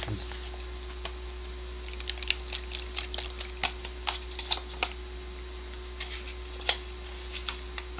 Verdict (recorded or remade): recorded